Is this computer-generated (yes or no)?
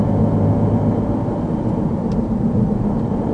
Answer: no